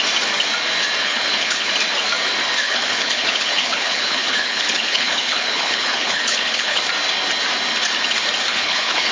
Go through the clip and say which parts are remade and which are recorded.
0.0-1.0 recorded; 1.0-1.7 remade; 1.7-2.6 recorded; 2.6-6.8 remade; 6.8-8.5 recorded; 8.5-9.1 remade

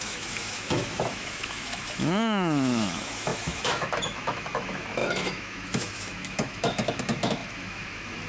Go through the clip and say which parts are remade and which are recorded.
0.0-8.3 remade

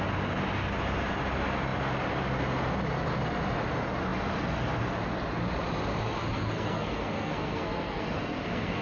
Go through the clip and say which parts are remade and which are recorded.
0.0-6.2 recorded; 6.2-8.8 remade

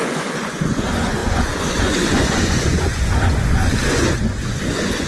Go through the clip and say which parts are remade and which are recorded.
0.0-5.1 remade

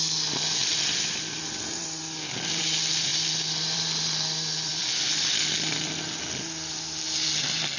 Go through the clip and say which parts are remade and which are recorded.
0.0-0.6 recorded; 0.6-2.6 remade; 2.6-3.1 recorded; 3.1-4.9 remade; 4.9-7.8 recorded

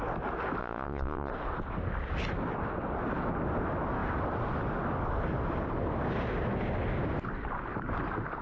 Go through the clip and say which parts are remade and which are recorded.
0.0-0.6 recorded; 0.6-1.3 remade; 1.3-8.4 recorded

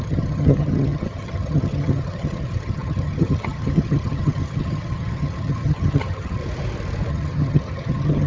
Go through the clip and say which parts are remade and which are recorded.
0.0-6.4 remade; 6.4-7.1 recorded; 7.1-8.3 remade

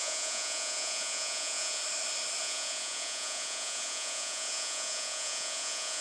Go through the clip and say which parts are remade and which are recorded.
0.0-1.8 remade; 1.8-2.4 recorded; 2.4-6.0 remade